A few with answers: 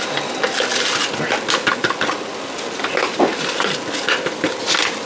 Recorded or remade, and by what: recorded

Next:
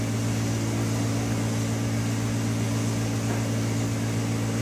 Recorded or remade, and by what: recorded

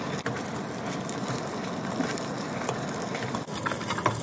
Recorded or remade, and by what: recorded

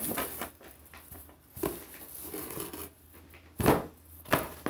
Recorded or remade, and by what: recorded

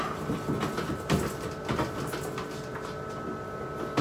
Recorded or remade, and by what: recorded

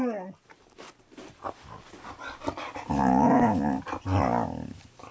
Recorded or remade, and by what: recorded